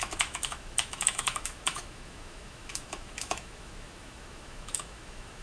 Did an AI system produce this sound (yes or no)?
yes